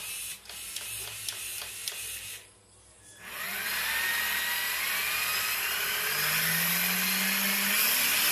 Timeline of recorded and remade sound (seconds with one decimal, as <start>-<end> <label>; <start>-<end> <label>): 0.0-8.3 recorded